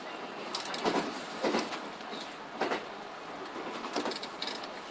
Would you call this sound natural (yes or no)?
yes